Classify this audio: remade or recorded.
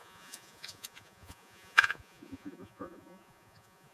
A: remade